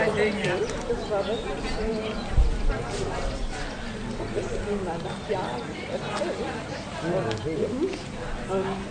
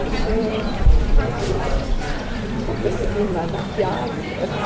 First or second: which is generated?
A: second